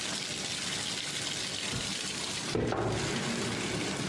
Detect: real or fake real